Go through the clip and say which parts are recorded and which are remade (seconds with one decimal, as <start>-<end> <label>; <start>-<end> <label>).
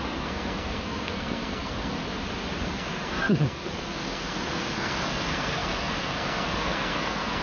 0.0-2.0 remade; 2.0-2.6 recorded; 2.6-7.4 remade